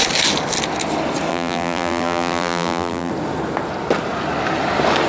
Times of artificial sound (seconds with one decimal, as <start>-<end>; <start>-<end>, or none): 1.3-3.1